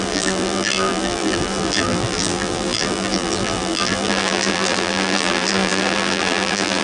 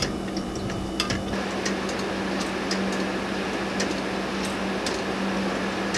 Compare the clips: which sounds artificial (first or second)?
first